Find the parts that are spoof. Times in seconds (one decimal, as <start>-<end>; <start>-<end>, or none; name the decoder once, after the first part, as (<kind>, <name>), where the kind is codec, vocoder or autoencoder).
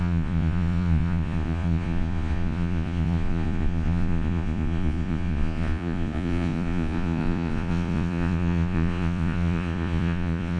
0.0-10.6 (vocoder, Vocos)